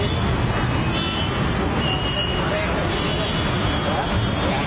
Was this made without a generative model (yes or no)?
yes